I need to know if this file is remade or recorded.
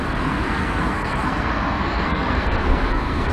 remade